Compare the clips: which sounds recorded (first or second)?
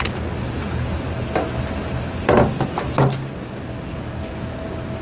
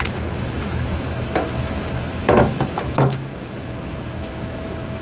first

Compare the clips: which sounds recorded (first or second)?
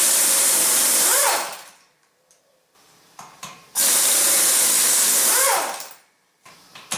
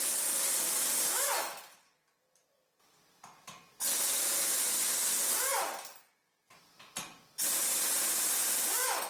second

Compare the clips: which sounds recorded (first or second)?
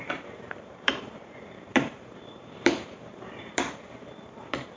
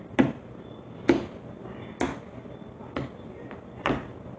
second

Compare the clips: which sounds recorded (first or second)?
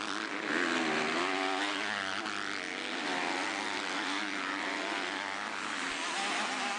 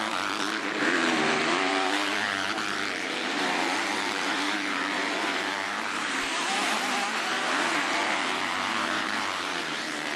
first